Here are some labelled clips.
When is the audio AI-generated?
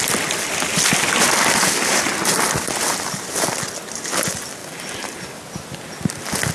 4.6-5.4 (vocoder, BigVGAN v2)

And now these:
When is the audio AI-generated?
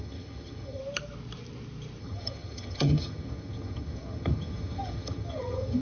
0.0-0.8 (vocoder, HiFi-GAN); 2.0-5.8